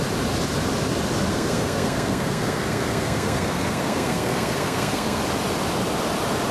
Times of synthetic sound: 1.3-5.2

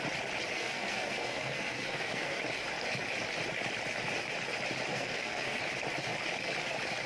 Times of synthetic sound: 0.5-2.4; 4.9-5.6

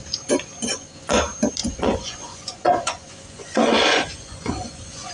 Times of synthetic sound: 0.7-1.2; 1.6-5.1

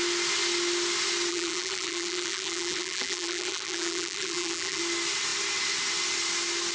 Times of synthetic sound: 1.3-4.8

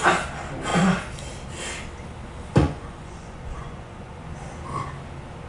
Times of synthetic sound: 2.6-4.2

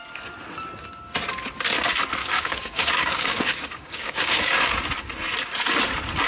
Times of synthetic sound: 2.2-4.8